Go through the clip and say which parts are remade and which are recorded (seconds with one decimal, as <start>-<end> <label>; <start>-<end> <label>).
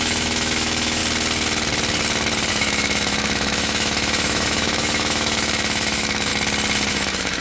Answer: 0.0-1.0 remade; 1.0-2.5 recorded; 2.5-6.3 remade; 6.3-6.9 recorded; 6.9-7.4 remade